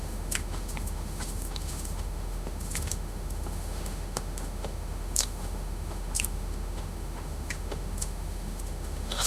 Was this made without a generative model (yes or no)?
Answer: no